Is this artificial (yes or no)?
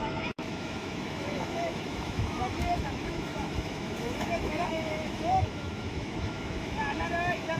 yes